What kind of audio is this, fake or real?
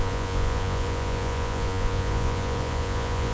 fake